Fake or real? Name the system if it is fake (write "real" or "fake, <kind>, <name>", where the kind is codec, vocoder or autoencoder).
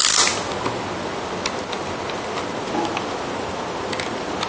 real